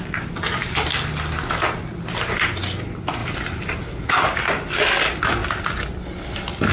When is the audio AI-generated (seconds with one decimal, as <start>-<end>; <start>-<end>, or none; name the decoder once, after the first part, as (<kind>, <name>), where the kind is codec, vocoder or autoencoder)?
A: none